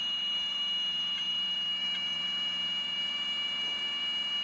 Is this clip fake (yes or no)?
yes